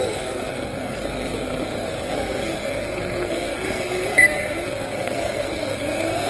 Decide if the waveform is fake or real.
fake